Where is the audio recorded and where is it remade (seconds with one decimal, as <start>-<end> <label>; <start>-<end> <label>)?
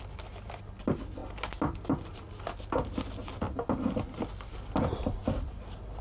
0.0-6.0 recorded